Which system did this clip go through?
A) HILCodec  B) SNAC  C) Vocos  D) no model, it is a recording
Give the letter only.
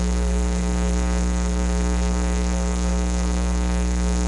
B